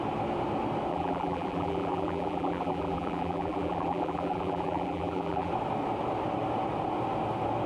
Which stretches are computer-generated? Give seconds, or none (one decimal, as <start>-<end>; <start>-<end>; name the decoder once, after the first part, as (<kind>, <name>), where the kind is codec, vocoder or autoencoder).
0.9-5.5 (vocoder, BigVGAN v2)